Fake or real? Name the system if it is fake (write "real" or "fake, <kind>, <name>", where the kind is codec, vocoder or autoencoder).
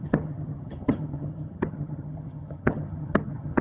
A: fake, vocoder, HiFi-GAN